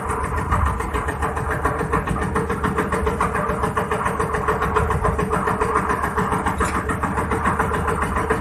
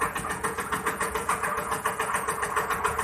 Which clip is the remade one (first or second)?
second